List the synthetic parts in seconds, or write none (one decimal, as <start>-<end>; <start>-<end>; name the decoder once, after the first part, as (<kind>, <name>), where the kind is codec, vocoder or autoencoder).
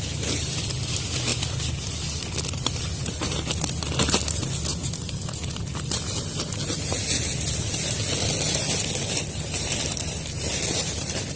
none